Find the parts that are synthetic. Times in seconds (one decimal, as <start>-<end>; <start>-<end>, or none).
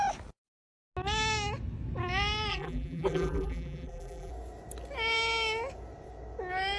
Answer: 2.5-4.3